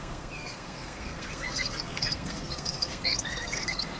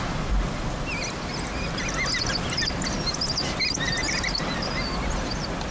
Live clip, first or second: second